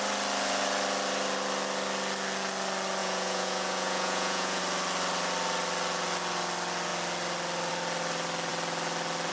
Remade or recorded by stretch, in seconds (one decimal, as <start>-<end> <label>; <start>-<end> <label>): 0.0-3.0 recorded; 3.0-4.6 remade; 4.6-9.3 recorded